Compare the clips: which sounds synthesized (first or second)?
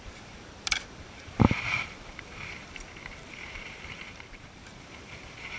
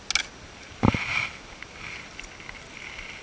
first